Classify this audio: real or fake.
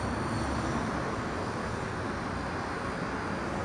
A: real